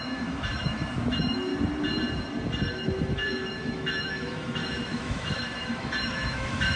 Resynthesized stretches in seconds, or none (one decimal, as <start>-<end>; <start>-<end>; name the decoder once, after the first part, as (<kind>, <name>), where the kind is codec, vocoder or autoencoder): 0.0-1.5 (autoencoder, DAC-VAE); 2.7-6.8